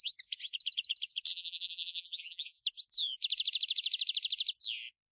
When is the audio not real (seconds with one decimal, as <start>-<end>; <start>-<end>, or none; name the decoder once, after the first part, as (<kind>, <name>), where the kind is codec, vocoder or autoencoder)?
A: 1.3-2.6 (vocoder, BigVGAN v2)